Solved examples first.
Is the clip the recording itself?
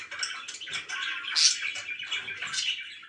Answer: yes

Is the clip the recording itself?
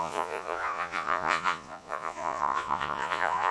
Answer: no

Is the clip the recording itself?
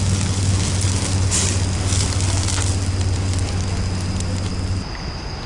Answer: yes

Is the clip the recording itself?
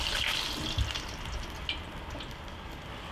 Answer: yes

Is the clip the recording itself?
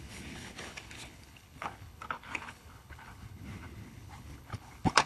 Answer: no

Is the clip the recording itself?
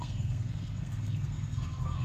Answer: no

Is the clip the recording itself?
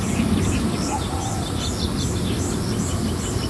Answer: yes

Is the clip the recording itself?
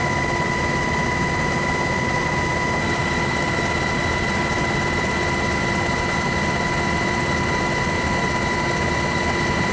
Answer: yes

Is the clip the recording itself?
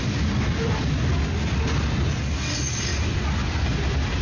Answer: yes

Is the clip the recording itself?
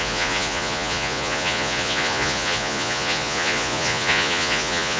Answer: no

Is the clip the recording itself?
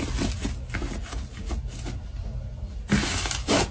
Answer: yes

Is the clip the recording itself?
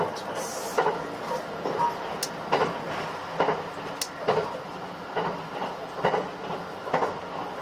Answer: yes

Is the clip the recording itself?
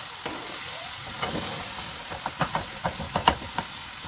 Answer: yes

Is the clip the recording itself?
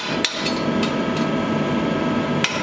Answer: yes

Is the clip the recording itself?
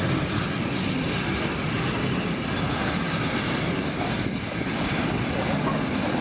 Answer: yes